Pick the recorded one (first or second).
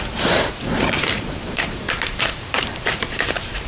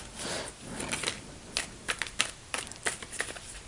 second